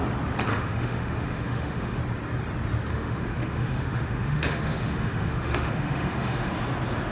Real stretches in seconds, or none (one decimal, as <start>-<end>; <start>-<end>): 0.0-0.5; 2.0-2.9; 6.5-7.1